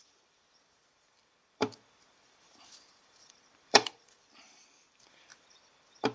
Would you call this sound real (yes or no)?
no